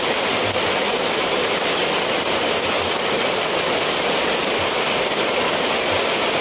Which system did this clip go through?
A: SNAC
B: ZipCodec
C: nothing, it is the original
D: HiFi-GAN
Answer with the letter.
C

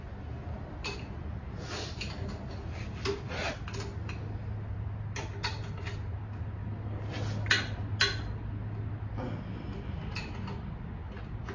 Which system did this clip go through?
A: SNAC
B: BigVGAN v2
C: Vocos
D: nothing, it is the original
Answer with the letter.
D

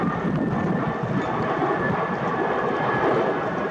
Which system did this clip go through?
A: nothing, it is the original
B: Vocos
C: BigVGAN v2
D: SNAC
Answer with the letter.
A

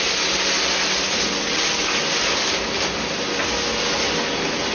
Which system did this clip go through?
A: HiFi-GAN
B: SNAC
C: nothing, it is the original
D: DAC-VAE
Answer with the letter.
C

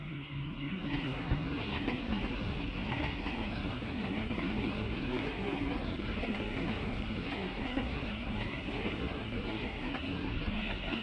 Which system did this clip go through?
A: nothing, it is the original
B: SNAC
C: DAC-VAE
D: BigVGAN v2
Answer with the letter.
B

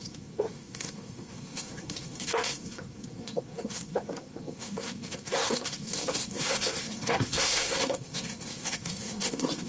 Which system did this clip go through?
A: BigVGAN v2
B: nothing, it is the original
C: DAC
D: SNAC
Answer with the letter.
D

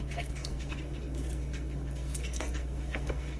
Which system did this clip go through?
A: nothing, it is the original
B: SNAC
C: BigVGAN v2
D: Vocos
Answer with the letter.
B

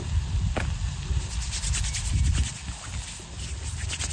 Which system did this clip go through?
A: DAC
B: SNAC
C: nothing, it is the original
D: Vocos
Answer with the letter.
C